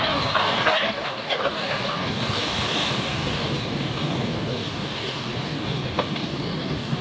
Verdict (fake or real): fake